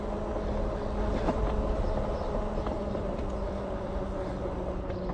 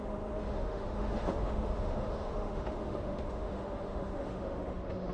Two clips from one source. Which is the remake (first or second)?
second